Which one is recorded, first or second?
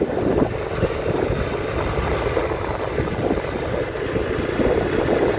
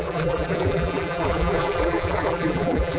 first